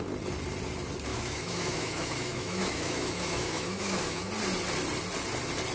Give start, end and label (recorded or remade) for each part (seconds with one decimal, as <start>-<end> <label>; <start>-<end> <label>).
0.0-1.1 recorded; 1.1-4.3 remade; 4.3-5.7 recorded